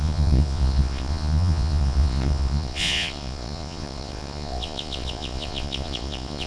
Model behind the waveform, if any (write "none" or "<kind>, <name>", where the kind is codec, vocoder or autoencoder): vocoder, Vocos